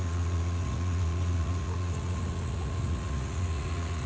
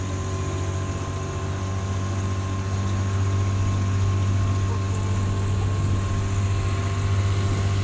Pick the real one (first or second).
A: second